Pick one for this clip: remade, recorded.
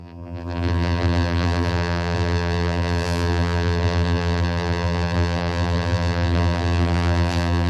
remade